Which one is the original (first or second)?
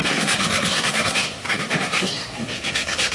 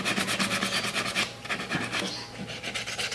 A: second